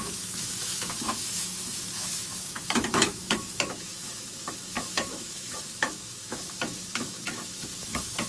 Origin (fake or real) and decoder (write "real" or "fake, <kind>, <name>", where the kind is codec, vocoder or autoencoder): fake, autoencoder, DAC-VAE